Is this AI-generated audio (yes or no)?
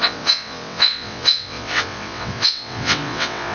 yes